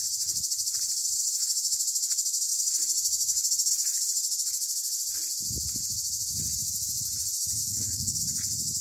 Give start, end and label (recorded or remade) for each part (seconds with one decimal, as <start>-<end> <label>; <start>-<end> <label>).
0.0-7.6 recorded; 7.6-8.2 remade; 8.2-8.8 recorded